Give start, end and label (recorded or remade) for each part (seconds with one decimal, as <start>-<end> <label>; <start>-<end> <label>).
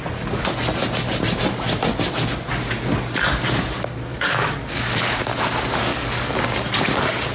0.0-4.1 recorded; 4.1-5.2 remade; 5.2-5.9 recorded; 5.9-6.4 remade; 6.4-7.3 recorded